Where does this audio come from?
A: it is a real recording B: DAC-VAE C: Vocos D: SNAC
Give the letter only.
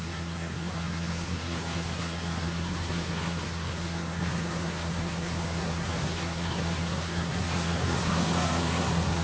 D